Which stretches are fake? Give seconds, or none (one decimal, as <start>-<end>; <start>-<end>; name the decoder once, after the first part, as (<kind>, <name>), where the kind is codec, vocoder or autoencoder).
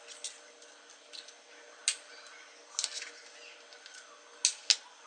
none